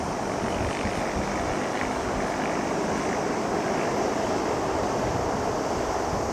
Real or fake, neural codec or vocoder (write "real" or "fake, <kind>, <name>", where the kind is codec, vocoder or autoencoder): real